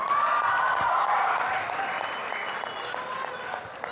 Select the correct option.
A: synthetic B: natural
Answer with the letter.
B